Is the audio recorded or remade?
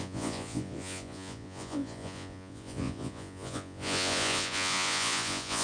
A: remade